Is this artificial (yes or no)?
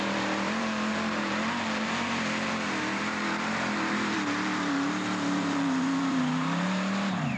yes